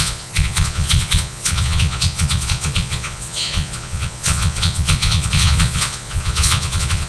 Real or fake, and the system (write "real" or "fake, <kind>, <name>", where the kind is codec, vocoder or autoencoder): fake, vocoder, Vocos